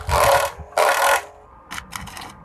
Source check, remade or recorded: recorded